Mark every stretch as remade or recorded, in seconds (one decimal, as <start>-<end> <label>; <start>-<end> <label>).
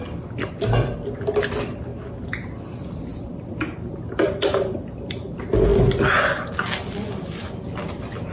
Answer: 0.0-3.1 recorded; 3.1-5.2 remade; 5.2-8.3 recorded